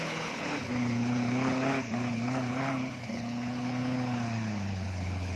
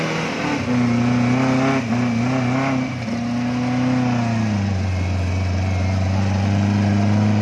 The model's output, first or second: first